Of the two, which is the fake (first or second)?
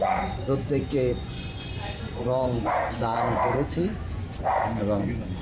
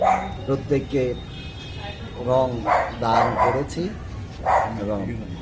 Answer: first